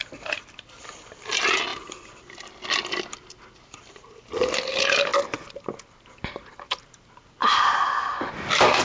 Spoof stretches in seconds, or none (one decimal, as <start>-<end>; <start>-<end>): none